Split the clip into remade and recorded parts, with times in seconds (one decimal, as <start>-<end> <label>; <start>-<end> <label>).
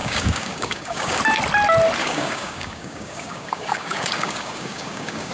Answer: 0.0-1.2 remade; 1.2-2.0 recorded; 2.0-5.3 remade